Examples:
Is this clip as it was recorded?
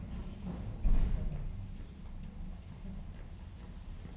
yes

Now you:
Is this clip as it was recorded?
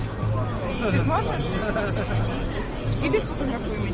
yes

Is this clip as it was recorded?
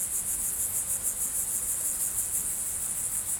yes